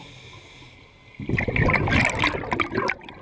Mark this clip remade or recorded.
recorded